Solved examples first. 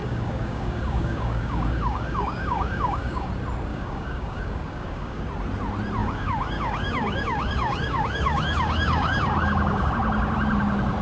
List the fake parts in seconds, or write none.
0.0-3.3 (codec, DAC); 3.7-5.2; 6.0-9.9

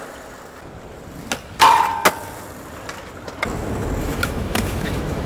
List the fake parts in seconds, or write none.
4.0-5.3 (autoencoder, DAC-VAE)

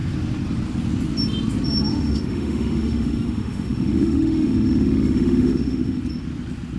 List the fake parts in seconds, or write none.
1.9-6.0 (autoencoder, DAC-VAE)

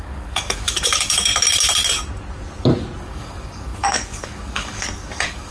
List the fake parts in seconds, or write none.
0.0-1.3 (codec, DAC); 3.0-5.5

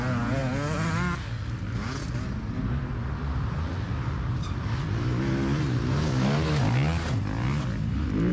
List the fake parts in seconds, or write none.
none

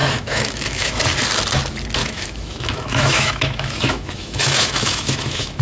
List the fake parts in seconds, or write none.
0.0-1.0 (autoencoder, DAC-VAE); 2.0-5.6

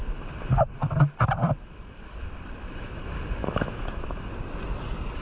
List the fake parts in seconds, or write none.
3.4-4.3 (autoencoder, DAC-VAE)